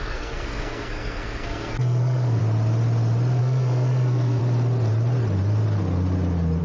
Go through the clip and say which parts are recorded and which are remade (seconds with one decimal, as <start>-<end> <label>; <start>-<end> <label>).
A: 0.0-2.4 remade; 2.4-3.4 recorded; 3.4-4.4 remade; 4.4-6.6 recorded